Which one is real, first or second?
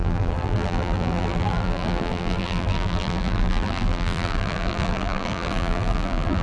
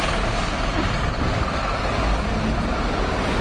second